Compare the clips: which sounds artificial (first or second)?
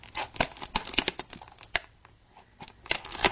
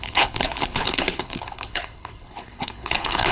second